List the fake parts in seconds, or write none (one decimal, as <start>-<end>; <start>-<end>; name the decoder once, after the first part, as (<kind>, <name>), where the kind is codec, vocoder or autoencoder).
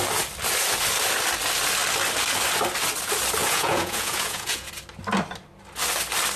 3.4-4.7 (vocoder, Vocos)